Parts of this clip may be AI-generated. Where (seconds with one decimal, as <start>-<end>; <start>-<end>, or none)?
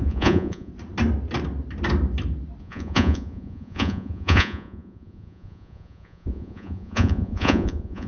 0.0-0.7; 2.6-8.1